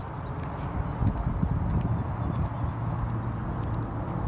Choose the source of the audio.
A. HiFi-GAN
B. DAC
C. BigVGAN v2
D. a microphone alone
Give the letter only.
D